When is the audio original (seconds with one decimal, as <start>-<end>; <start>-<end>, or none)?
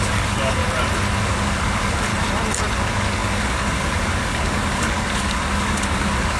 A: 0.6-1.2; 2.1-2.8